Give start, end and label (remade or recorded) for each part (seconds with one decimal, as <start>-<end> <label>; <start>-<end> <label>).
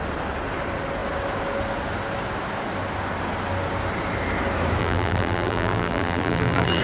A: 0.0-4.8 recorded; 4.8-6.8 remade